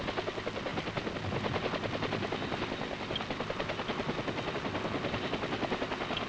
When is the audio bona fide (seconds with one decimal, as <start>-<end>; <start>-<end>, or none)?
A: 0.0-6.3